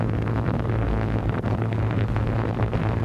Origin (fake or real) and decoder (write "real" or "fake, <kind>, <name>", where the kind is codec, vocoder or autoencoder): fake, codec, SNAC